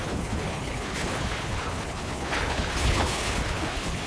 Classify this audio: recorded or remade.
remade